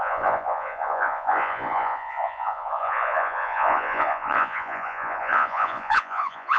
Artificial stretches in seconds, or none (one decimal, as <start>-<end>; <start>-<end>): 0.0-6.6